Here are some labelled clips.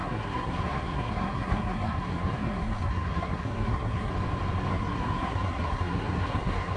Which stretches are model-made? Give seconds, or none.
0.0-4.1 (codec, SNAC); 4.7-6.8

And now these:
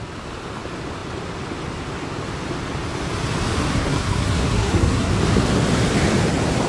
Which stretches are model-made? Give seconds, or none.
3.7-5.1 (codec, SNAC)

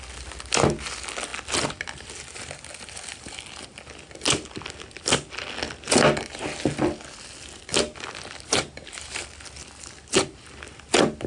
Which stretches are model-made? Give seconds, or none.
none

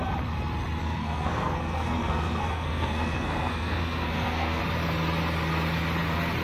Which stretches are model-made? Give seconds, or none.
0.8-4.6 (codec, SNAC)

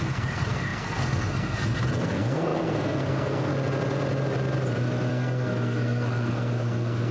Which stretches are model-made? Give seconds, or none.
0.0-3.5 (codec, SNAC); 5.1-7.1

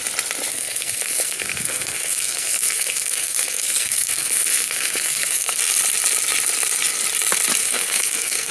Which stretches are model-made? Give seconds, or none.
0.5-5.6 (codec, SNAC); 7.6-8.5

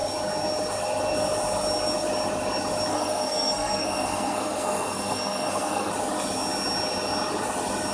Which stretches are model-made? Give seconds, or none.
2.9-5.9 (codec, SNAC)